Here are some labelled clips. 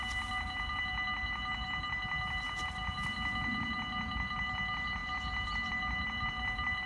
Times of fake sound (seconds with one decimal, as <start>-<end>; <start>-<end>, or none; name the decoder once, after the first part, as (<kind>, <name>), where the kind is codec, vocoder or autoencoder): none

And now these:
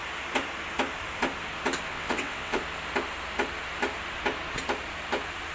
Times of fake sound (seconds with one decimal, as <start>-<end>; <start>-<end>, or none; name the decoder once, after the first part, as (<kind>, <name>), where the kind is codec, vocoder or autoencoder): 1.9-2.6 (vocoder, WaveNeXt)

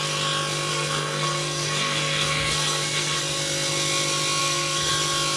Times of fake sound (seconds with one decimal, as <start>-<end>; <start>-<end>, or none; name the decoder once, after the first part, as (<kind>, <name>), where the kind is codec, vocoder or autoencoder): 0.7-3.2 (codec, SNAC); 4.4-4.9

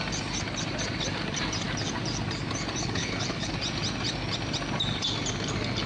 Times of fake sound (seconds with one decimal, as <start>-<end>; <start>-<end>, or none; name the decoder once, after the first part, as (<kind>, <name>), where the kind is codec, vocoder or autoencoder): 2.8-3.5 (codec, HILCodec)